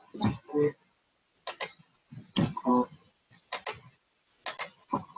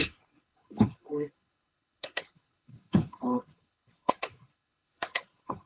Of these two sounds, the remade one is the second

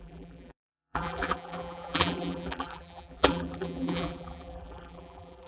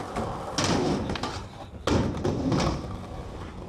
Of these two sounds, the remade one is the first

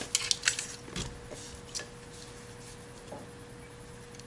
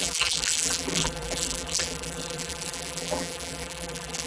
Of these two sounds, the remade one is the second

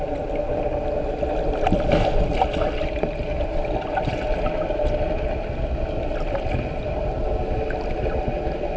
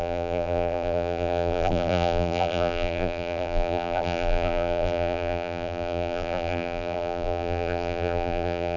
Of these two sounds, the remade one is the second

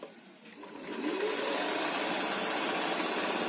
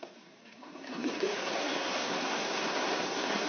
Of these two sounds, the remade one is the second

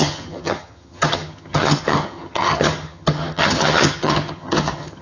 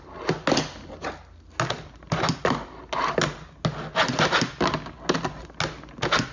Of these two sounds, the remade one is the first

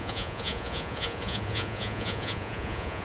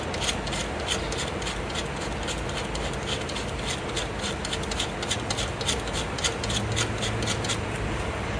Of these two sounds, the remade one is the first